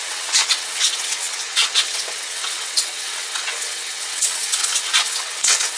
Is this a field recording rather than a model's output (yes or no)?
no